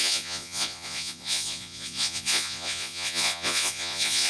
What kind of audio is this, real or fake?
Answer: fake